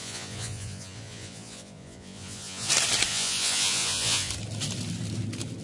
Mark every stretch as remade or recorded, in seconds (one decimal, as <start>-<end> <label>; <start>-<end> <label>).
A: 0.0-2.7 remade; 2.7-3.1 recorded; 3.1-4.3 remade; 4.3-5.6 recorded